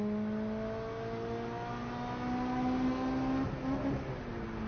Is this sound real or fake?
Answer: real